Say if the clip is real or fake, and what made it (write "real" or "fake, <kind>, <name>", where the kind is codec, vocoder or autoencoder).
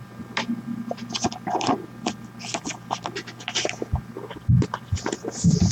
real